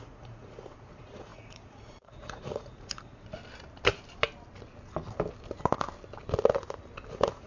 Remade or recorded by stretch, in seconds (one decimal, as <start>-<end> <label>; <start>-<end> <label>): 0.0-3.4 remade; 3.4-7.1 recorded; 7.1-7.5 remade